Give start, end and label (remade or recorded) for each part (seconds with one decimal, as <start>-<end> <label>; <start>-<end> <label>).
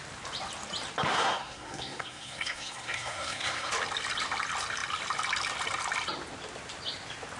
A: 0.0-1.1 recorded; 1.1-3.7 remade; 3.7-7.4 recorded